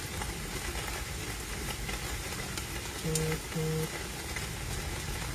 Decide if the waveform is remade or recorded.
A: recorded